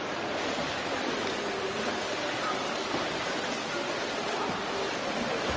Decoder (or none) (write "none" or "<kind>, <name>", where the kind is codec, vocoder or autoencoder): none